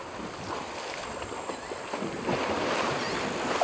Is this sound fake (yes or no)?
no